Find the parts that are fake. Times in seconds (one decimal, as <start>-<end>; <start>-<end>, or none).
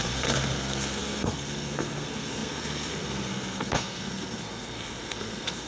0.0-5.7